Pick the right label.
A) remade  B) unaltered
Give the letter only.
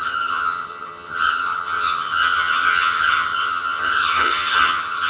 A